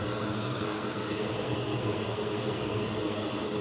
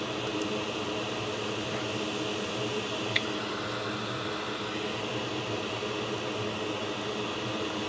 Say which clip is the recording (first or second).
second